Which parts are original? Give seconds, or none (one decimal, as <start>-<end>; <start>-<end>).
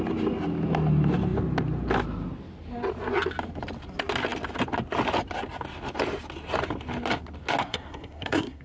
0.0-7.6